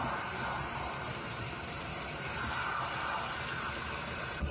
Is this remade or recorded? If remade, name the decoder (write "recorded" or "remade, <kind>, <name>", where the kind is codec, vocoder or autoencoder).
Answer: remade, vocoder, BigVGAN v2